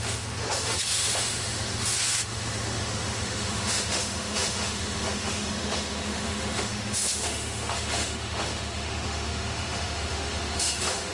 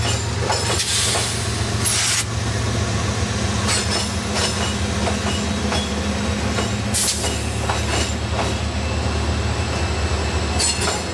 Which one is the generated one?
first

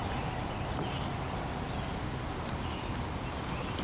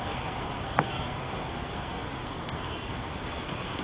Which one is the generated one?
second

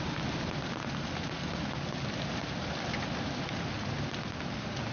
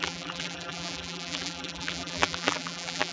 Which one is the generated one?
second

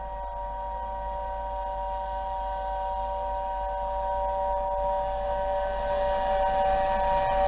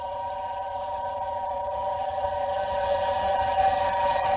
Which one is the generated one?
second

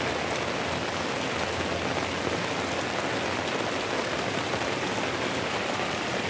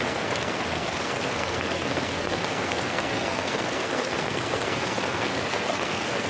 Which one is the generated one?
second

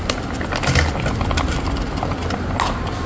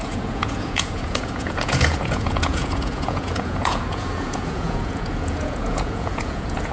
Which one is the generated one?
second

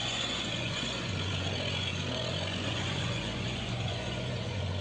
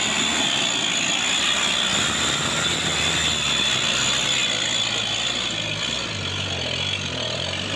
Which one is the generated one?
first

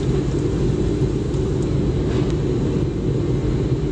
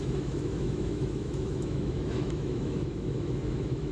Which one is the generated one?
second